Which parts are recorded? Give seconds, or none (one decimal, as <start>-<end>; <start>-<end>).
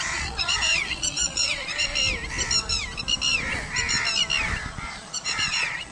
1.9-4.7